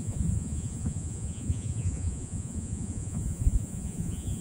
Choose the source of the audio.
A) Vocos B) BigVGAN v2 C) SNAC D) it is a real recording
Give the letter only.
A